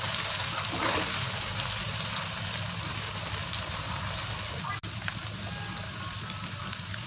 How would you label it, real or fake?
real